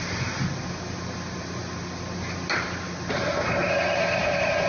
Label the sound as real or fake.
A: real